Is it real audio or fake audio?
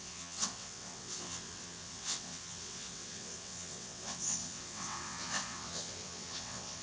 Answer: fake